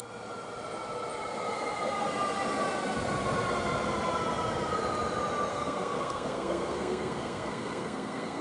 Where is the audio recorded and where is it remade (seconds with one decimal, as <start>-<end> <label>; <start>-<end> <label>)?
0.0-5.5 recorded; 5.5-8.4 remade